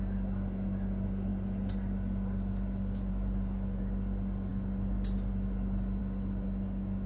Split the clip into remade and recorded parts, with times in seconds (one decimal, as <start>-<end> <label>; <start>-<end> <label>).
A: 0.0-7.1 recorded